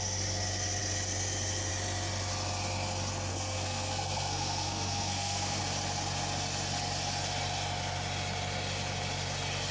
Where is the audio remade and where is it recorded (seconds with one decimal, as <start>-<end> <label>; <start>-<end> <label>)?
0.0-3.3 recorded; 3.3-5.6 remade; 5.6-9.7 recorded